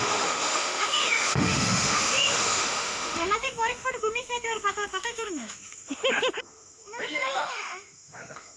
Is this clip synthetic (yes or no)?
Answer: yes